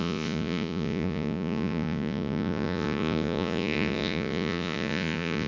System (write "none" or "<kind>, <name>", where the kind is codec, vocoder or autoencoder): vocoder, Vocos